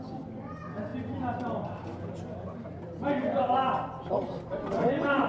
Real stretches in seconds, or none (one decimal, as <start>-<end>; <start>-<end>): 0.0-5.3